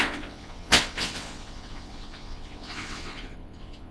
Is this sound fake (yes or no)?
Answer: yes